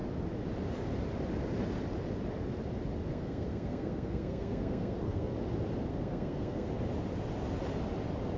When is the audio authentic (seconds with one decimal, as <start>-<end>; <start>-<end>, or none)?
0.0-3.1; 5.3-5.9; 6.7-8.4